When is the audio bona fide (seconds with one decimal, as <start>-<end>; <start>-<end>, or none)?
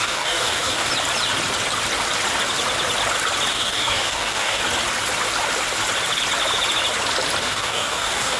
0.9-3.5; 4.6-7.4